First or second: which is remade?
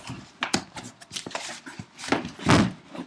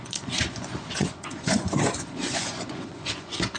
second